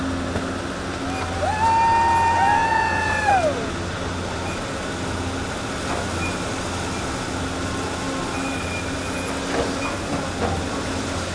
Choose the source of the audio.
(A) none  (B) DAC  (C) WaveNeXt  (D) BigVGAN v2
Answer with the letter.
A